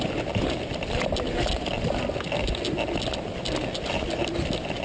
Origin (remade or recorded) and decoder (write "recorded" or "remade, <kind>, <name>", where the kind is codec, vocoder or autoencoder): recorded